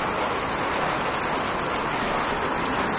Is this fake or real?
real